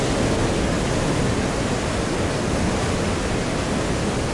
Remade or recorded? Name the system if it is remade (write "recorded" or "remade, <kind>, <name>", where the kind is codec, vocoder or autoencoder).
recorded